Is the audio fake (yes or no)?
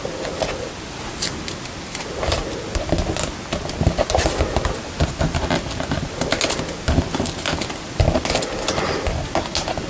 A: no